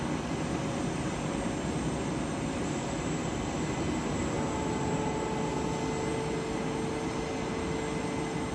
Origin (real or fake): real